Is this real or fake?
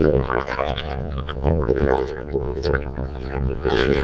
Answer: fake